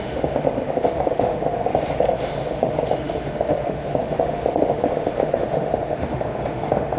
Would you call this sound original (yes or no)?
no